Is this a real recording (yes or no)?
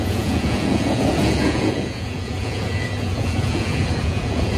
no